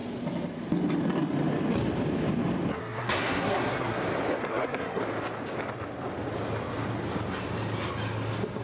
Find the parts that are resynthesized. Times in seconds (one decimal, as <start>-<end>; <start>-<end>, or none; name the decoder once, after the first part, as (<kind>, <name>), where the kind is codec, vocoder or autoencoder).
2.7-4.0 (codec, SNAC); 4.4-5.0

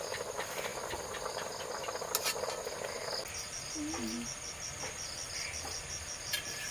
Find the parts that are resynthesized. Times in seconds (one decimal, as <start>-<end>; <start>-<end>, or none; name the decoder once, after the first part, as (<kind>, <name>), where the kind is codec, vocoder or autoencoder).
none

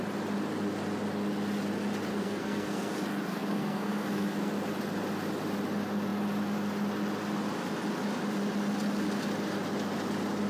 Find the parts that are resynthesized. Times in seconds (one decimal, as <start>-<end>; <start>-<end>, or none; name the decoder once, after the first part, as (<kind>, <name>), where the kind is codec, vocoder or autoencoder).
2.1-2.9 (codec, SNAC); 3.3-4.5

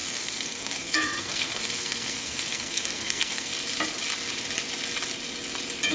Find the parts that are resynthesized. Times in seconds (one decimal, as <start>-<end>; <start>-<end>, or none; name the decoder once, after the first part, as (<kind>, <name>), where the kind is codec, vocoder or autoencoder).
0.0-3.5 (codec, SNAC)